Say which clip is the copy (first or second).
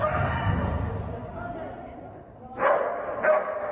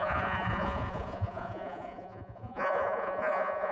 second